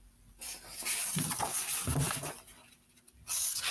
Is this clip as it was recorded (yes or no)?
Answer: no